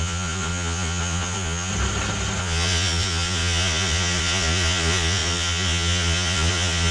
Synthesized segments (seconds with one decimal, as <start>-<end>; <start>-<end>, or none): 0.0-1.7; 2.4-6.9